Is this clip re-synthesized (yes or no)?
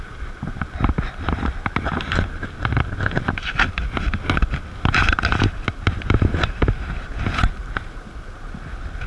no